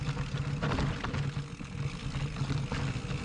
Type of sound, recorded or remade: recorded